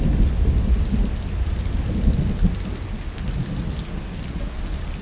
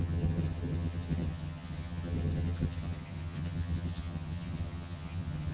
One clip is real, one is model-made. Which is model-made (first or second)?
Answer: second